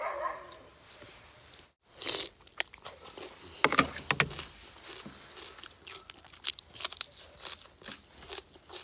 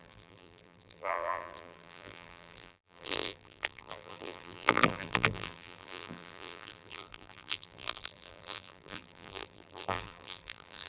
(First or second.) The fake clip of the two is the second